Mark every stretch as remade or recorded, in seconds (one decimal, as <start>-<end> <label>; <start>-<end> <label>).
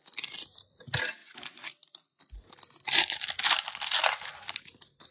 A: 0.0-5.1 recorded